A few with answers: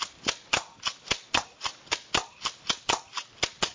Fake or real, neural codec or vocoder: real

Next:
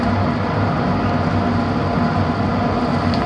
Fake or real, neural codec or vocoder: real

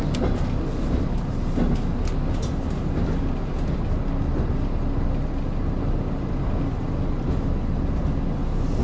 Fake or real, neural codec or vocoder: real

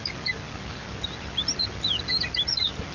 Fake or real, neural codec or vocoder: real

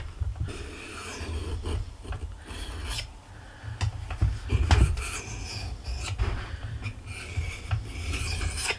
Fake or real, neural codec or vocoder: real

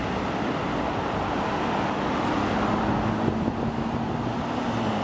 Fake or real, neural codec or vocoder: real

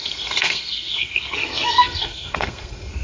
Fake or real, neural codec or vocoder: fake, codec, SNAC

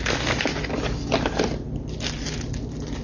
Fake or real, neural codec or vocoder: real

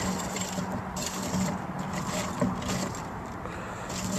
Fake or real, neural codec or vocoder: real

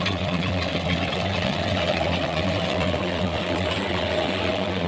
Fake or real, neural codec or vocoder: fake, vocoder, WaveNeXt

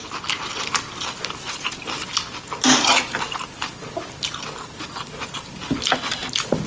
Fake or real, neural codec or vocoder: real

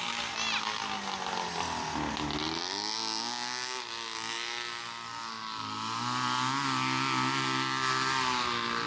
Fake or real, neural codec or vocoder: real